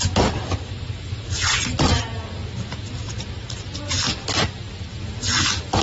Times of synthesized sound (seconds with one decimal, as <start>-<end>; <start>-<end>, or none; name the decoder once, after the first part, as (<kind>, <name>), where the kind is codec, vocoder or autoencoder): none